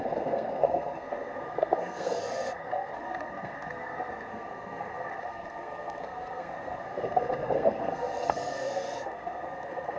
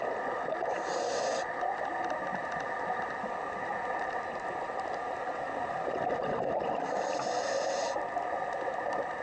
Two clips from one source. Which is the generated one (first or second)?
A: first